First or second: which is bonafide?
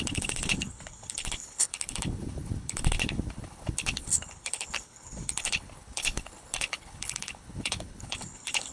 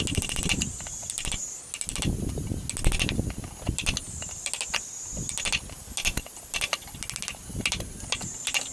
second